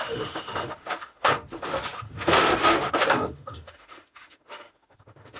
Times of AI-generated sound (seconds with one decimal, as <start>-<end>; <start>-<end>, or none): 0.0-5.4